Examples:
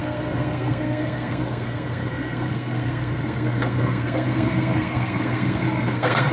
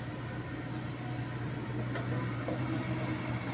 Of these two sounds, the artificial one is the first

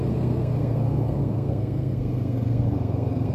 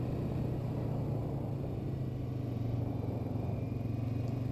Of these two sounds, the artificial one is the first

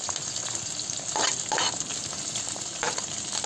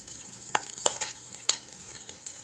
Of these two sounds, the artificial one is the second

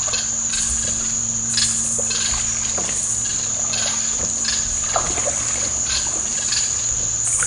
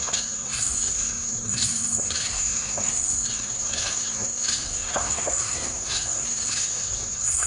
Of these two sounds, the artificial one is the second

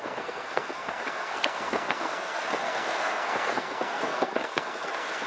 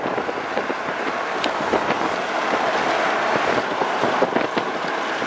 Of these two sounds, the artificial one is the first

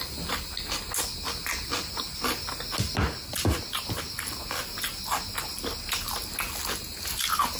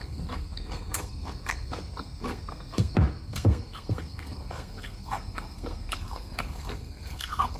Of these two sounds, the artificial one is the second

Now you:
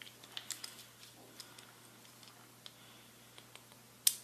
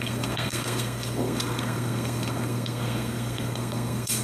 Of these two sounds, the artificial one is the second